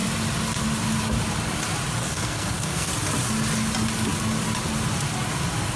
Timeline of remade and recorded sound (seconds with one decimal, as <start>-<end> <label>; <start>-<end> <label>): 0.0-2.0 recorded; 2.0-2.9 remade; 2.9-5.8 recorded